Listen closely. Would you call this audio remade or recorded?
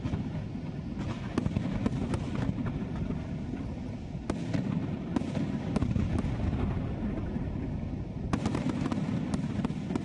recorded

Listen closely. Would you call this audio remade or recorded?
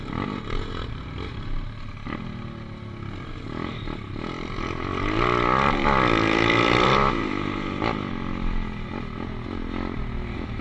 recorded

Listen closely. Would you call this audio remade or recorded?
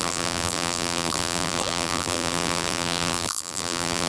remade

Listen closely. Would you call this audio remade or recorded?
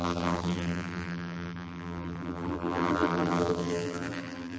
remade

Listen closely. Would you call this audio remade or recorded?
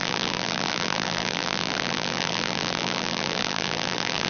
remade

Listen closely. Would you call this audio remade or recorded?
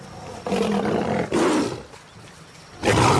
recorded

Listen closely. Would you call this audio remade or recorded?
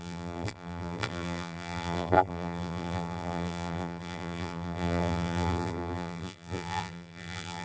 remade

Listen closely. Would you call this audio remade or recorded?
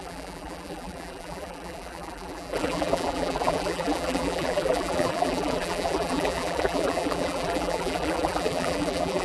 remade